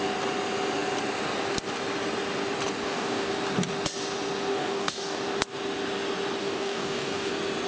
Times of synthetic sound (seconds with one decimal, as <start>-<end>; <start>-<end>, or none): 2.8-3.3; 4.5-5.2; 6.4-7.3